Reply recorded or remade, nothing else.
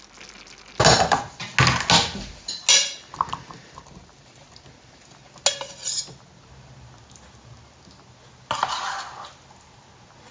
recorded